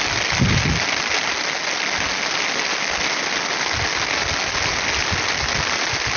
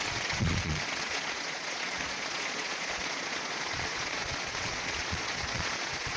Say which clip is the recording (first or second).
first